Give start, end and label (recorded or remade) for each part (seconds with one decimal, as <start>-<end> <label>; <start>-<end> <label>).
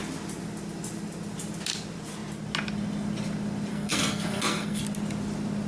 0.0-3.7 recorded; 3.7-4.8 remade; 4.8-5.7 recorded